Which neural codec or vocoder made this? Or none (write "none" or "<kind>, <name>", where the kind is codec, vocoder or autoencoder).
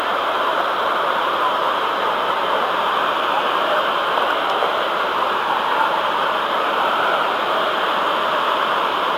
vocoder, BigVGAN v2